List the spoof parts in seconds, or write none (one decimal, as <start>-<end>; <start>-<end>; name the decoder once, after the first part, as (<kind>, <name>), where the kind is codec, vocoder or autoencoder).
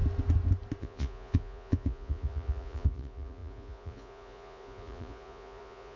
0.8-6.0 (vocoder, Vocos)